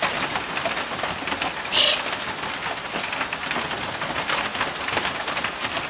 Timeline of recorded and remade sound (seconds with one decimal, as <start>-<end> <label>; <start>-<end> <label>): 0.0-4.5 recorded; 4.5-5.9 remade